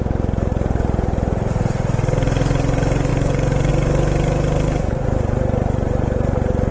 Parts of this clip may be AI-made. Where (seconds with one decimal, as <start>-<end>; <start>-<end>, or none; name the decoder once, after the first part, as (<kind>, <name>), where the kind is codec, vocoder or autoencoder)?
3.1-3.7 (vocoder, Vocos)